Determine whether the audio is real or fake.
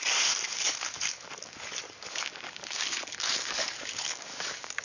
fake